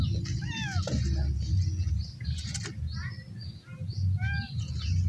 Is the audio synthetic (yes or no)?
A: no